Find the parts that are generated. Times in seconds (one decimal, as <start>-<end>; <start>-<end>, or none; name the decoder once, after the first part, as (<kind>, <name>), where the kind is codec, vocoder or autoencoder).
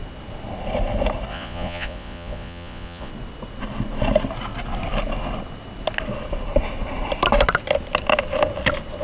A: 1.3-3.1 (vocoder, Vocos)